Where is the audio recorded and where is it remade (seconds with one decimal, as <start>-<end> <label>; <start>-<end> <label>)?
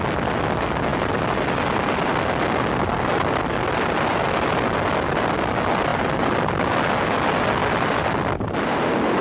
0.0-7.6 recorded; 7.6-9.2 remade